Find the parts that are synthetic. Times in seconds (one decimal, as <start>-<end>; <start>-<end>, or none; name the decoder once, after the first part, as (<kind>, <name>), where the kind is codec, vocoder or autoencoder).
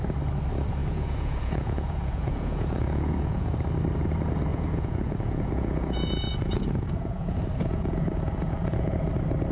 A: 0.8-3.5 (vocoder, Vocos); 4.5-9.1